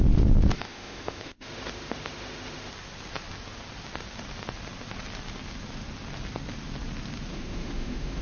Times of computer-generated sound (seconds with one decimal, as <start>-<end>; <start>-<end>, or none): 0.5-2.7; 7.3-8.2